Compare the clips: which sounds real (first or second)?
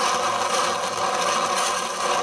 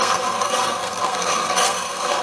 first